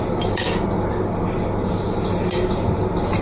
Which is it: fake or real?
real